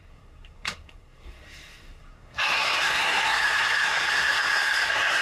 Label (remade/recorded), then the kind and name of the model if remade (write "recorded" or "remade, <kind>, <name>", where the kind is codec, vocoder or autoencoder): remade, codec, SNAC